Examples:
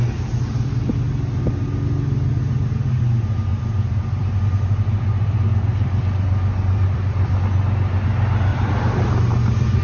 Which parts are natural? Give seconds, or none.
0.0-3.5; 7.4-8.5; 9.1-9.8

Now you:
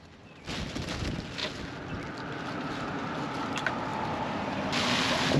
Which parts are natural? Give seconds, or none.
0.0-5.4